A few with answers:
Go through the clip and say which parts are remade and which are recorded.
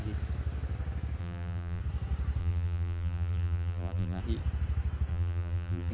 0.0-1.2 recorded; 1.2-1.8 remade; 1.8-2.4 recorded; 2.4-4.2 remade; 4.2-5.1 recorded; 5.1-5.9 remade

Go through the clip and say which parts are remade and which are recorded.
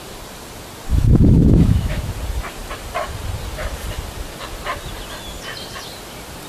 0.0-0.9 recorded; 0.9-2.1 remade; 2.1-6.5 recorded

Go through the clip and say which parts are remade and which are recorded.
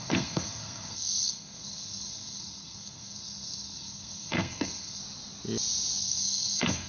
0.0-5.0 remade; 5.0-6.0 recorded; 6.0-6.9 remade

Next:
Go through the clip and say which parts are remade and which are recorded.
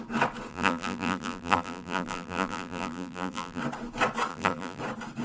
0.0-0.5 recorded; 0.5-3.6 remade; 3.6-4.3 recorded; 4.3-4.8 remade; 4.8-5.2 recorded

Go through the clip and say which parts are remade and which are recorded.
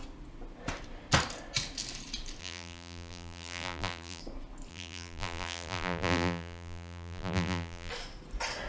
0.0-2.4 recorded; 2.4-4.2 remade; 4.2-4.7 recorded; 4.7-7.9 remade; 7.9-8.7 recorded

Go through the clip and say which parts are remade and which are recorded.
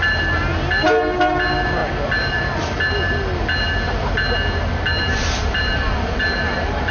0.0-6.9 recorded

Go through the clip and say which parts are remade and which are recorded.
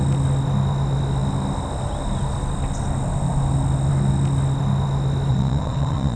0.0-5.3 recorded; 5.3-6.2 remade